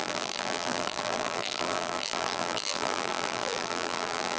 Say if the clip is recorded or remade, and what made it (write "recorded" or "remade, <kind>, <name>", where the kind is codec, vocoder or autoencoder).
remade, vocoder, BigVGAN v2